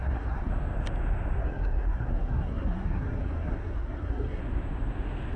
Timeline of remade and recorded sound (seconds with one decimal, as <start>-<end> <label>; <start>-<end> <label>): 0.0-0.5 remade; 0.5-1.4 recorded; 1.4-4.4 remade; 4.4-5.4 recorded